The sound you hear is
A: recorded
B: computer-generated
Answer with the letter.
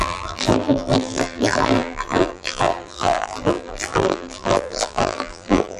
B